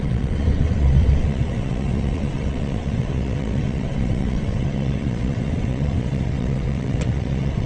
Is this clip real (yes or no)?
no